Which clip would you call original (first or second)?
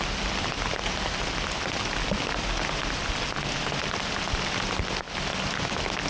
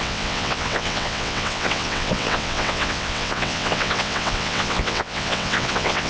first